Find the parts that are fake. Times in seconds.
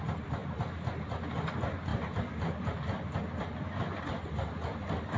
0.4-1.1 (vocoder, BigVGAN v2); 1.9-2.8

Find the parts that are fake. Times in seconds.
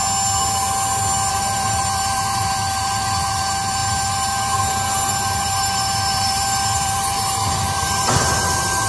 1.3-8.9 (vocoder, BigVGAN v2)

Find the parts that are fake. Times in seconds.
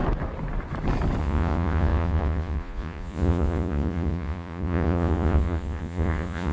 1.2-6.5 (vocoder, Vocos)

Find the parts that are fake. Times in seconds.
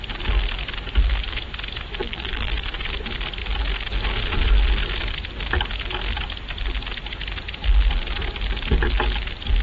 2.0-2.5 (vocoder, BigVGAN v2)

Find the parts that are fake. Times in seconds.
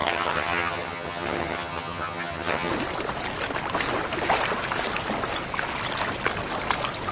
0.0-2.7 (vocoder, HiFi-GAN)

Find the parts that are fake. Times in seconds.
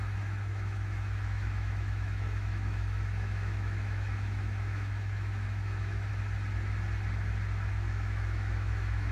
0.0-6.1 (autoencoder, DAC-VAE); 7.7-9.1